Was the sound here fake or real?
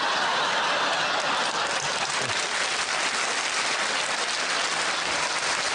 real